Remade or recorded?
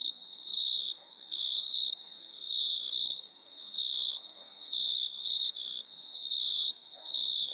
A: remade